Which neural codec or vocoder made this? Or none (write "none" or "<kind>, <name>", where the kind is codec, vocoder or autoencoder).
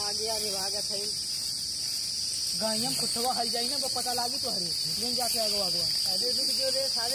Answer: none